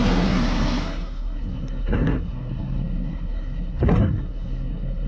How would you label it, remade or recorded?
remade